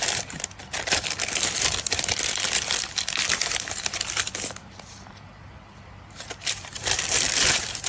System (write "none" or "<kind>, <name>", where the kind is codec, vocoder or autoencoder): vocoder, BigVGAN v2